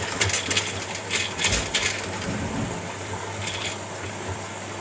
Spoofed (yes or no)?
no